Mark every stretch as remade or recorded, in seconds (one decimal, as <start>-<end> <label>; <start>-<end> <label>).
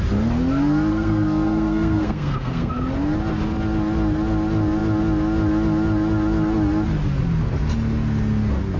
0.0-0.9 recorded; 0.9-2.7 remade; 2.7-8.8 recorded